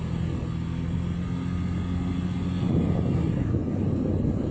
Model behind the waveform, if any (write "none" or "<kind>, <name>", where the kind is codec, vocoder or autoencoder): none